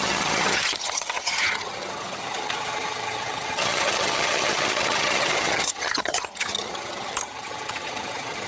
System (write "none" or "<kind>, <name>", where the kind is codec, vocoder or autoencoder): vocoder, HiFi-GAN